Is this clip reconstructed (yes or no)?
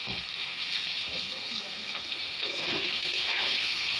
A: yes